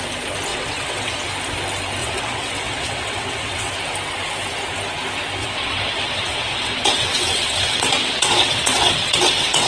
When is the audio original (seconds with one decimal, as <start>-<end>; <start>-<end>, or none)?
0.0-0.5; 1.2-2.0; 3.7-5.4